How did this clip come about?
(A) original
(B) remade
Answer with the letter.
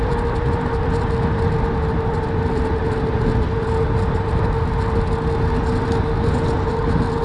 A